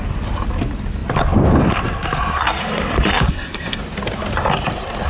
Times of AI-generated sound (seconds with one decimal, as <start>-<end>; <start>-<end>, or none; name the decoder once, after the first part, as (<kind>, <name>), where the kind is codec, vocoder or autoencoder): 3.3-3.8 (codec, SNAC)